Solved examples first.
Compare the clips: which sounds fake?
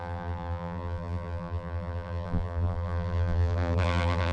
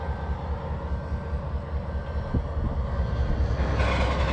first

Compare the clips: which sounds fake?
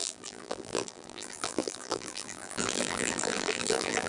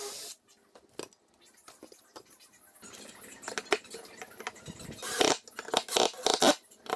first